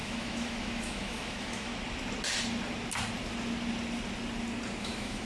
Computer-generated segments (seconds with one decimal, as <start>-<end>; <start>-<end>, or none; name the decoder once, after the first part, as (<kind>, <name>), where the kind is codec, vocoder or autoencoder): 0.0-1.7 (autoencoder, DAC-VAE); 4.8-5.2